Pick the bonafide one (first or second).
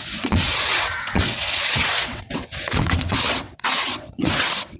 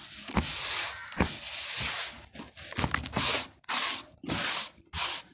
second